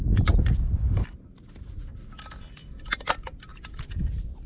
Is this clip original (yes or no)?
yes